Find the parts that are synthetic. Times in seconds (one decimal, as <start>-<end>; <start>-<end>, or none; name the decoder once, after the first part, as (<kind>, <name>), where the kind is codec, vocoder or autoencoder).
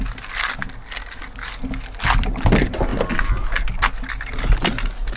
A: none